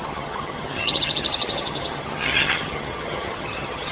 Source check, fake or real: fake